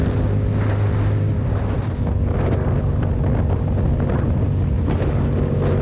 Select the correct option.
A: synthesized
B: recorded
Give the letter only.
B